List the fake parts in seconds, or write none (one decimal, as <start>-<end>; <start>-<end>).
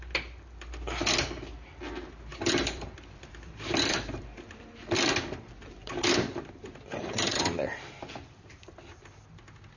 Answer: 2.3-6.5; 7.3-8.1